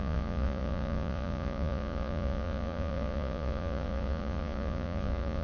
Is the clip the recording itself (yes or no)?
no